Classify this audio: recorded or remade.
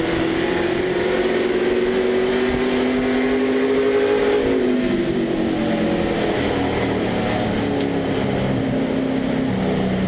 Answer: recorded